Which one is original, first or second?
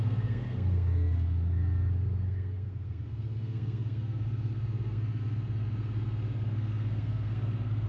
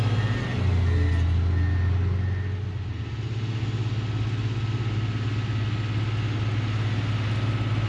second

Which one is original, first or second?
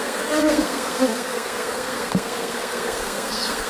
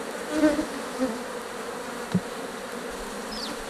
second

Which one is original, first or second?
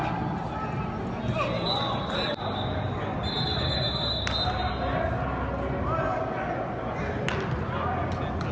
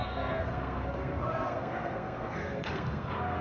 first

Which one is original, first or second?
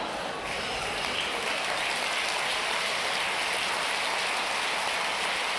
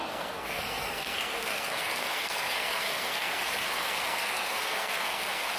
first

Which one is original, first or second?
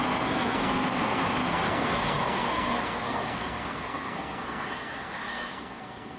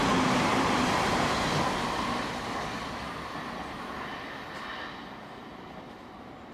second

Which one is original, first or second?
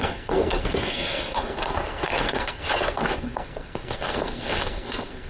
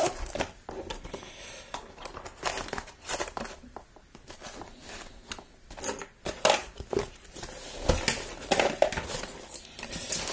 second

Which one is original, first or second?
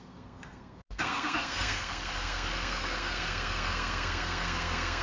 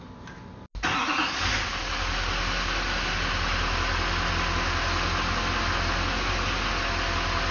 second